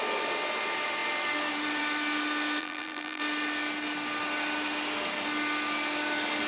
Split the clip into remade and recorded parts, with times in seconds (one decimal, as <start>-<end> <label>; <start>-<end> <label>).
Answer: 0.0-2.6 recorded; 2.6-3.2 remade; 3.2-6.5 recorded